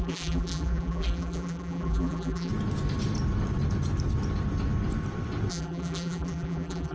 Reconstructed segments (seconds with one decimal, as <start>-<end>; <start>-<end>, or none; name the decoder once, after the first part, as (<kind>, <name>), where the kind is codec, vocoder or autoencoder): 0.0-2.5 (vocoder, BigVGAN v2); 5.5-6.9